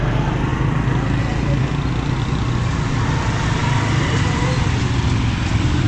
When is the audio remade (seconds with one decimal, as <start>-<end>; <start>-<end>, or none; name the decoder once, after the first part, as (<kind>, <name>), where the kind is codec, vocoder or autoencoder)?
3.6-4.2 (vocoder, BigVGAN v2)